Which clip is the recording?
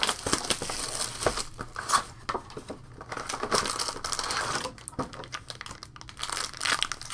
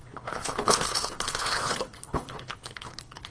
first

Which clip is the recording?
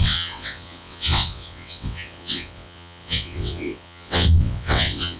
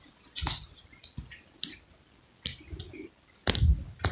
second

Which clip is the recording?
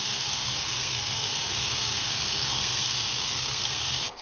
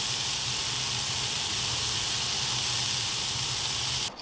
second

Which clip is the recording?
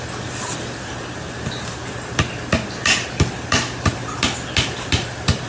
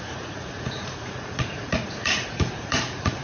first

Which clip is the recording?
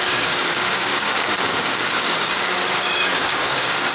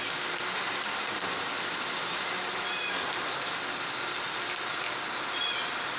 second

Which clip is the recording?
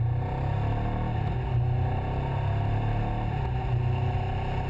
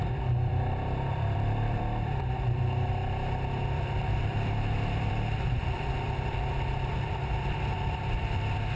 first